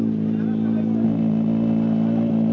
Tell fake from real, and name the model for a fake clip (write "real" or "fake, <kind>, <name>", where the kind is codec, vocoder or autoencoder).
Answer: real